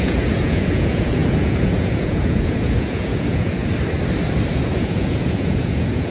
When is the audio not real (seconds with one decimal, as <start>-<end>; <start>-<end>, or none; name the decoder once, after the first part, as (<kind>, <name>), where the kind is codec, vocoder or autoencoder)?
0.0-3.6 (vocoder, Vocos); 4.5-6.1